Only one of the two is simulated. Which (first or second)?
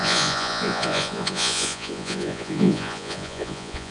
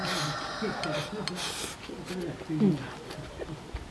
first